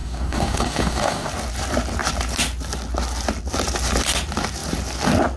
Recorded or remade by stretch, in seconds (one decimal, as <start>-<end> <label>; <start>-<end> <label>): 0.0-1.3 remade; 1.3-5.4 recorded